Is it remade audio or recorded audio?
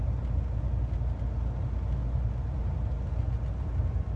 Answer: recorded